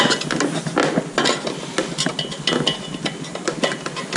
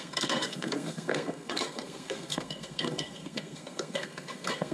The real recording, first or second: first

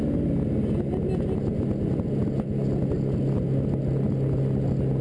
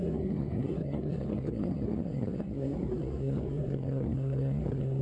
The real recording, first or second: first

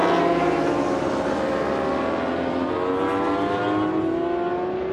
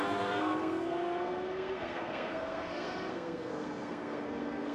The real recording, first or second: first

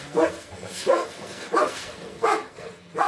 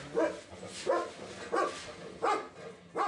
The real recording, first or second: second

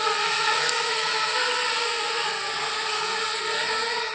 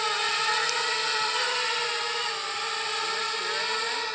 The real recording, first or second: second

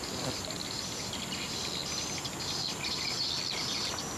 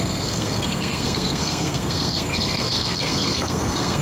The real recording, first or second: first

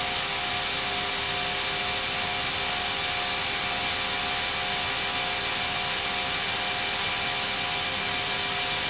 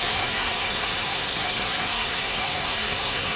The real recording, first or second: first